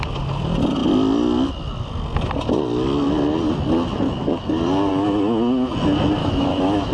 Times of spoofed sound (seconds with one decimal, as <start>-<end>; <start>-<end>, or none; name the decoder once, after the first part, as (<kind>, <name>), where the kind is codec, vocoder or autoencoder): 6.2-6.9 (autoencoder, DAC-VAE)